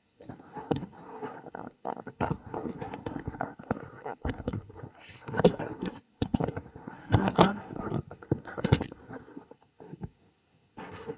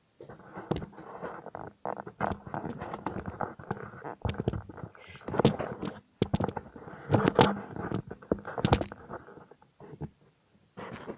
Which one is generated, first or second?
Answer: first